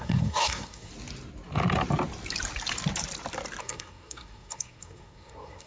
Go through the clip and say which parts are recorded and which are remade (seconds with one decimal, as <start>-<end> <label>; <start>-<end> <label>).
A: 0.0-0.9 remade; 0.9-3.6 recorded; 3.6-5.7 remade